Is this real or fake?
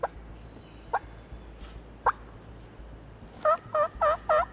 real